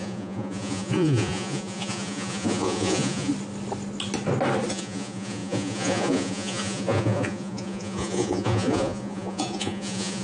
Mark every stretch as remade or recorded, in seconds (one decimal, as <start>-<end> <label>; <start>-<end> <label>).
0.0-3.3 remade; 3.3-4.7 recorded; 4.7-10.2 remade